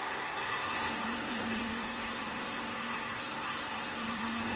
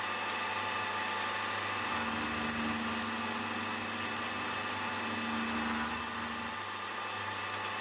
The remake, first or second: first